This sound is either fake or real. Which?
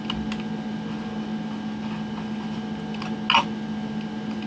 real